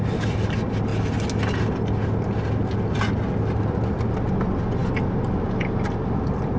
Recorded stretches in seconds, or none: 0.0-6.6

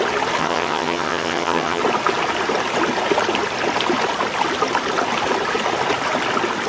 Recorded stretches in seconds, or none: 0.0-0.4; 1.8-6.7

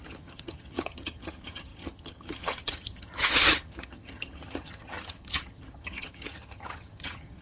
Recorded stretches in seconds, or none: none

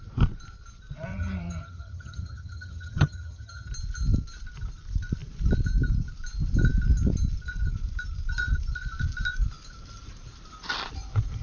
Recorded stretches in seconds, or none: 0.0-1.1; 3.7-11.4

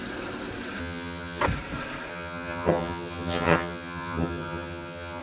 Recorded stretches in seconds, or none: 0.0-0.8; 1.4-2.1

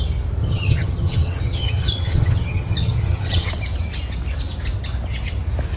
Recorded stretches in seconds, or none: 0.0-0.4; 3.5-5.8

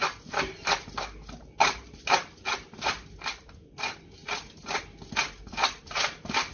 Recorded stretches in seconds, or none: 0.0-6.5